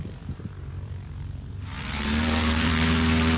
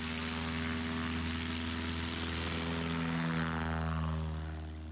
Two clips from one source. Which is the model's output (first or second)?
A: first